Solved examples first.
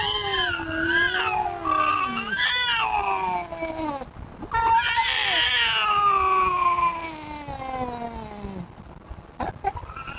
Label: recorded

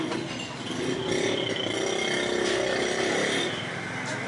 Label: recorded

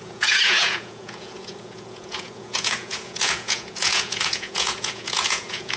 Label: remade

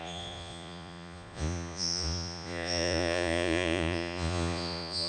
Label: remade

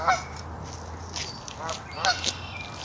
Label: recorded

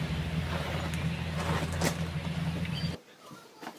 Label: recorded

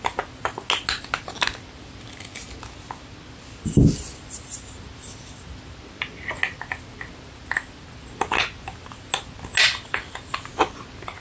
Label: recorded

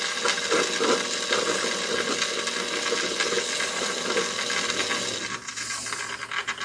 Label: recorded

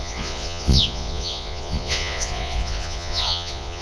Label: remade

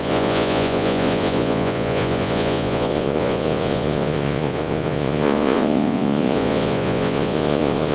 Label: remade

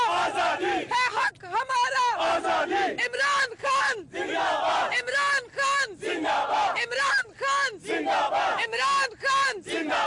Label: recorded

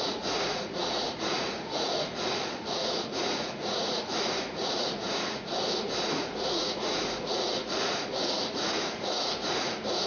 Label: remade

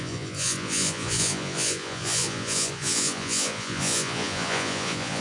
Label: remade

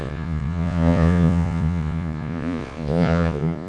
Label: remade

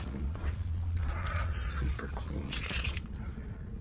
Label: remade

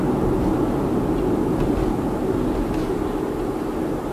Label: recorded